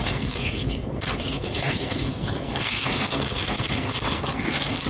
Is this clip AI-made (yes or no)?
yes